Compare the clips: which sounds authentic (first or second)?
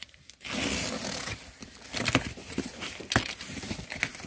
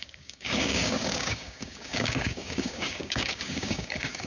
first